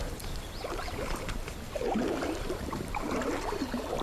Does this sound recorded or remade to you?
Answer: remade